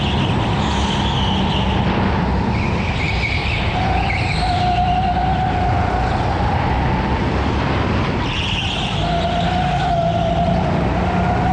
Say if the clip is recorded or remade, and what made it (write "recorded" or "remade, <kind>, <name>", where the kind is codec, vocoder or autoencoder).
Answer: recorded